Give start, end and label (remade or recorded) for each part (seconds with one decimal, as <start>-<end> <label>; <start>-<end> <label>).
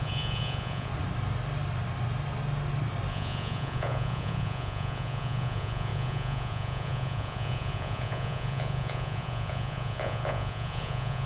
0.0-0.9 remade; 0.9-3.1 recorded; 3.1-11.3 remade